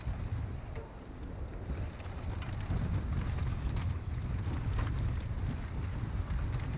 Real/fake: real